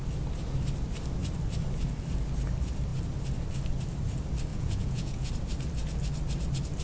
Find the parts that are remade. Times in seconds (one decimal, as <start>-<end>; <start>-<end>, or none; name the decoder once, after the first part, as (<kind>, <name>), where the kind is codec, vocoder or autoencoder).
4.5-5.3 (vocoder, Vocos)